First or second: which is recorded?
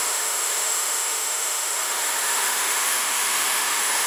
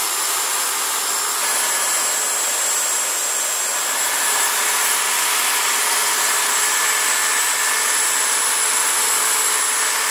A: second